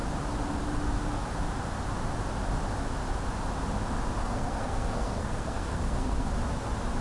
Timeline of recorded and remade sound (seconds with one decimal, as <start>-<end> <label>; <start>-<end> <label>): 0.0-4.2 recorded; 4.2-6.3 remade; 6.3-7.0 recorded

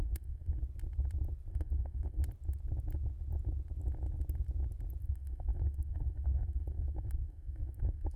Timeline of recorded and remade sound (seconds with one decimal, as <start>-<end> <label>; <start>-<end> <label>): 0.0-0.6 remade; 0.6-1.5 recorded; 1.5-2.2 remade; 2.2-5.0 recorded; 5.0-8.2 remade

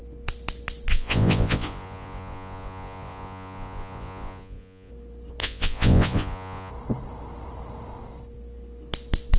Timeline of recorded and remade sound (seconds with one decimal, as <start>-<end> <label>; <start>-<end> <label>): 0.0-0.9 recorded; 0.9-4.9 remade; 4.9-5.4 recorded; 5.4-6.7 remade; 6.7-9.4 recorded

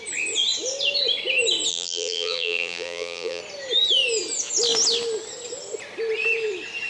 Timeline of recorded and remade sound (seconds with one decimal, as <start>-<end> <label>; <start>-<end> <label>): 0.0-1.7 recorded; 1.7-3.4 remade; 3.4-6.9 recorded

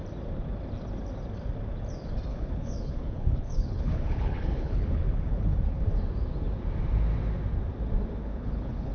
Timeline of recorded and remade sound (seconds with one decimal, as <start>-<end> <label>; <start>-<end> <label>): 0.0-2.3 recorded; 2.3-5.8 remade; 5.8-8.2 recorded; 8.2-8.9 remade

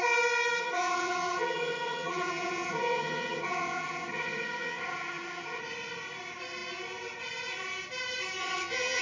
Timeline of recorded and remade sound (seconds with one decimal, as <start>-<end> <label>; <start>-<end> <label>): 0.0-0.6 recorded; 0.6-5.6 remade; 5.6-8.4 recorded; 8.4-9.0 remade

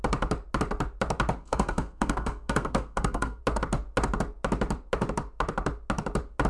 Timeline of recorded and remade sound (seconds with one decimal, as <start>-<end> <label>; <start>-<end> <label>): 0.0-1.4 recorded; 1.4-3.4 remade; 3.4-6.5 recorded